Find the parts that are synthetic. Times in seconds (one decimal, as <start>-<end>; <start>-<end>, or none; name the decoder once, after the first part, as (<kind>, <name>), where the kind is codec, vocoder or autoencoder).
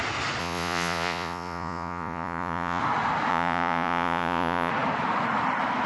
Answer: 0.4-2.8 (vocoder, Vocos); 3.3-4.7